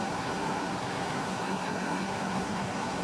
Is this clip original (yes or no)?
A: no